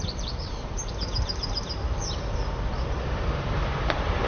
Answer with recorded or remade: remade